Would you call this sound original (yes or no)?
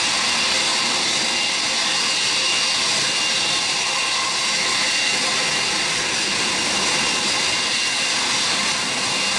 yes